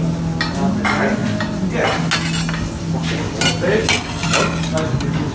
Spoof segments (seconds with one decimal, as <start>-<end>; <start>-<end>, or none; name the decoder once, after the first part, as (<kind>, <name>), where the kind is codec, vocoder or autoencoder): none